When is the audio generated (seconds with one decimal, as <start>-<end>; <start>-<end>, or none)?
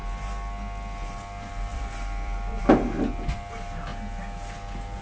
1.7-2.6